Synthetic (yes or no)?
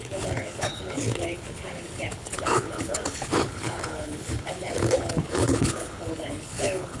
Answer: yes